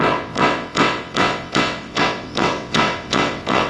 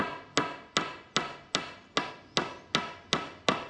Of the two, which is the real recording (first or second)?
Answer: second